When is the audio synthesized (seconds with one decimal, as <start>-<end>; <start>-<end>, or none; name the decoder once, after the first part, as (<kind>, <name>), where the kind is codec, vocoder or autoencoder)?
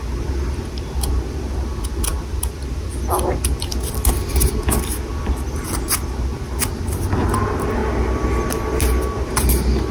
none